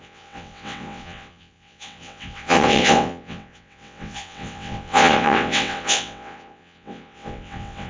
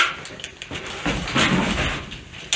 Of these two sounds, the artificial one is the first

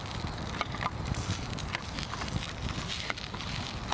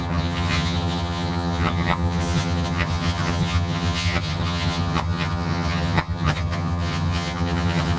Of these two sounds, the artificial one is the second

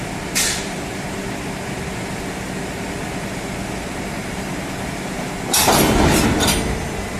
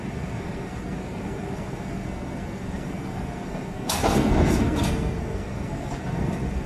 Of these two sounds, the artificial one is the second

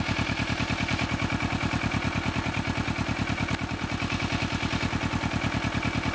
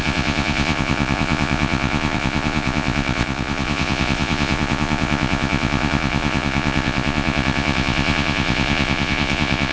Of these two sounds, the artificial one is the second